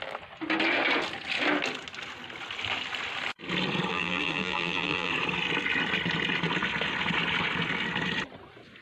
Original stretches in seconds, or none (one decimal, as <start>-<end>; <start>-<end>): 0.0-3.9; 5.1-8.8